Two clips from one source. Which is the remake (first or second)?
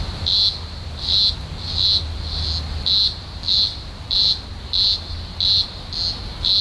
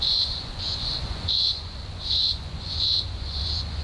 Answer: second